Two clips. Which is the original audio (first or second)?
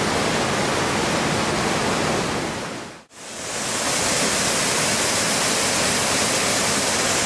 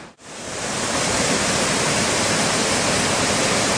first